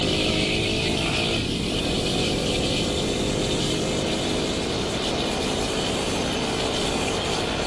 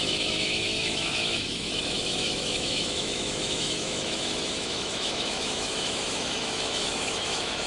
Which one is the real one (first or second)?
first